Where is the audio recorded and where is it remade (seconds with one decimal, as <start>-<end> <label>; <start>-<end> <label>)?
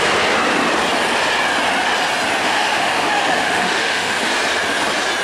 0.0-2.4 recorded; 2.4-4.2 remade; 4.2-5.2 recorded